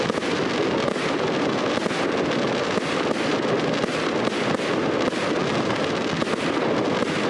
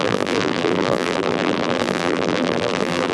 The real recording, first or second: first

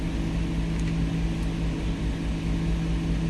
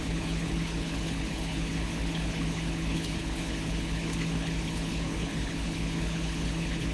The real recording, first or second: first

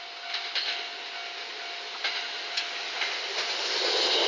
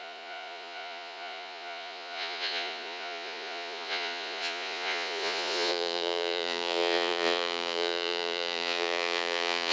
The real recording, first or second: first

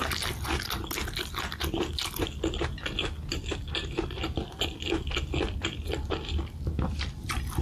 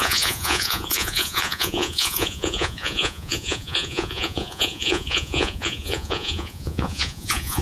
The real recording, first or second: first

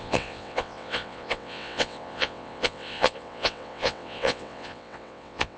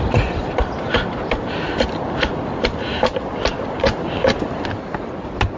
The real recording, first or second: second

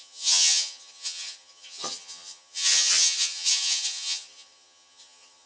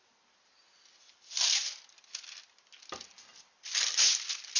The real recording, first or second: second